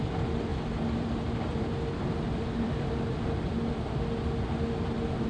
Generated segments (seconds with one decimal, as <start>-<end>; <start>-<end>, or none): 0.5-3.7